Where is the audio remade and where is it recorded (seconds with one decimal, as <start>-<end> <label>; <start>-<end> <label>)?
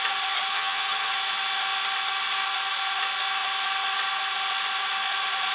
0.0-0.5 recorded; 0.5-1.1 remade; 1.1-5.5 recorded